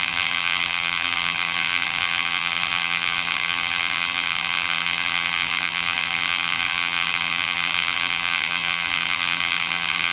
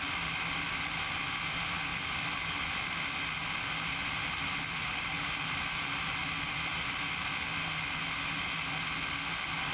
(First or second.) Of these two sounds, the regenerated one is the first